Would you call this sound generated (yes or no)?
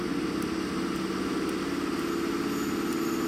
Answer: no